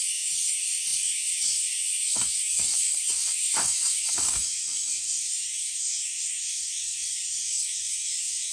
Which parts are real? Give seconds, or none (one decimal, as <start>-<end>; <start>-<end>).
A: none

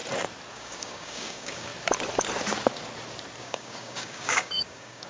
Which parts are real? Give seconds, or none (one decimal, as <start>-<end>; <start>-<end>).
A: 0.0-0.5; 1.7-3.4

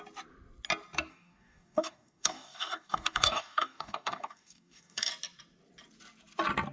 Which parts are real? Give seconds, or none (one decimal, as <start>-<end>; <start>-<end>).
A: 0.0-1.1; 5.1-6.7

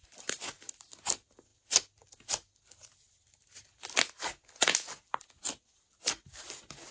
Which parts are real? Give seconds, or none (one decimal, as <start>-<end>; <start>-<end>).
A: 0.0-6.9

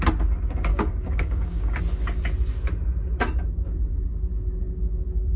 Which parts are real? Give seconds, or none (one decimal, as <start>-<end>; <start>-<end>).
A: 0.0-0.7; 1.8-5.4

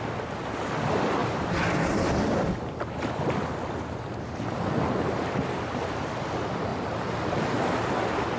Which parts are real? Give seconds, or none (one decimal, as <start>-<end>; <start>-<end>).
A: 0.0-8.4

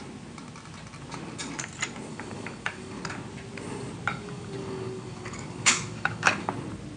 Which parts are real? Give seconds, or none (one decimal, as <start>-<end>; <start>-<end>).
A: 0.0-2.1; 3.0-4.1; 6.5-7.0